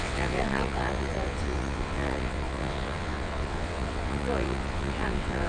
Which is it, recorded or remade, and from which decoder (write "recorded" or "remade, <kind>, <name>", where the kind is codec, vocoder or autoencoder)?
remade, vocoder, WaveNeXt